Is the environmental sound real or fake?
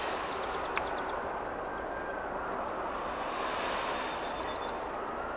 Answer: real